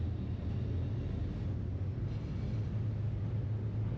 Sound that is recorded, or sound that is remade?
recorded